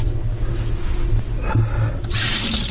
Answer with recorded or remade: recorded